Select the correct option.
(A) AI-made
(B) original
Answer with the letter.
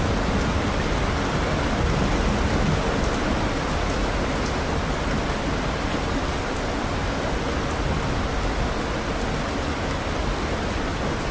B